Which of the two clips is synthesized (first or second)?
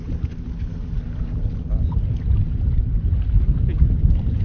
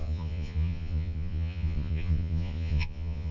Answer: second